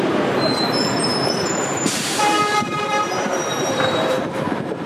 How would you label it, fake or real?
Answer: fake